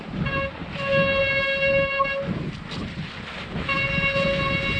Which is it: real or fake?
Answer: real